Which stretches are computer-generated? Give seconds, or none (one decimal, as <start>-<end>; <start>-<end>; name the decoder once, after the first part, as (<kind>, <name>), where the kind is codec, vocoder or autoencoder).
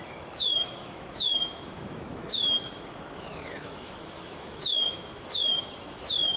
0.0-6.4 (autoencoder, DAC-VAE)